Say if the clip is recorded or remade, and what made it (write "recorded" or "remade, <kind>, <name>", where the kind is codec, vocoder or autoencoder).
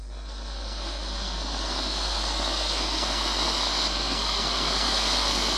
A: remade, codec, SNAC